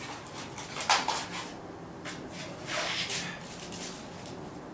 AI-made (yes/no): no